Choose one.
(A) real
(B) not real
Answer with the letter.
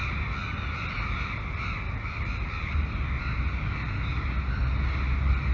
A